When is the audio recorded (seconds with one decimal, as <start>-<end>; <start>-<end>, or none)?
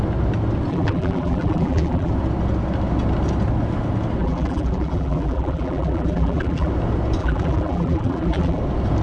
0.0-0.7; 2.1-4.2; 6.7-7.2; 8.6-9.0